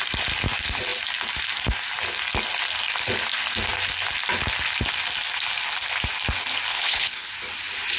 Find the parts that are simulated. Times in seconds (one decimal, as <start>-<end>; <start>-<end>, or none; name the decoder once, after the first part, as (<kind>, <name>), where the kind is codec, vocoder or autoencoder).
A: 6.7-7.3 (codec, HILCodec)